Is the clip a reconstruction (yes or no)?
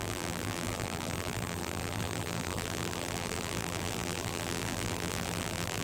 yes